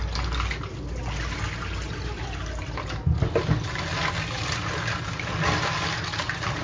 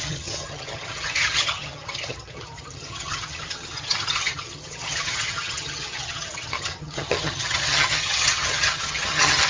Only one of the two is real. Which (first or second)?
first